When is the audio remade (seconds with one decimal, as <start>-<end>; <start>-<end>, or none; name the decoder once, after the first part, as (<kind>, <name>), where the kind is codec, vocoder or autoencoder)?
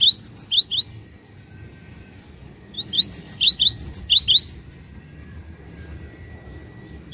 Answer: none